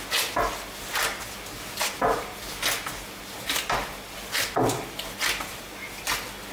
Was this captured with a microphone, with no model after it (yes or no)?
yes